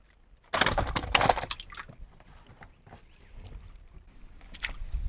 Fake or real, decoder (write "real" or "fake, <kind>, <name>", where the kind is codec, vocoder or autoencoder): real